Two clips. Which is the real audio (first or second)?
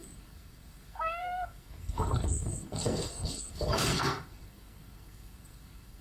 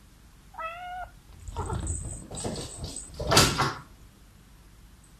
second